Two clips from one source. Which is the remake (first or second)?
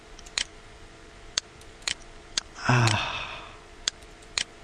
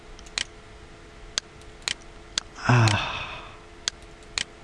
first